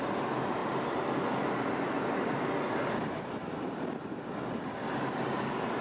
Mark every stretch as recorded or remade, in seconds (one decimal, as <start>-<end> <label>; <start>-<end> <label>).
0.0-5.8 recorded